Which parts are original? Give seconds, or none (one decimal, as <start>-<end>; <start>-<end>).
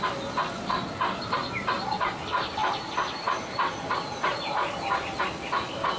0.0-6.0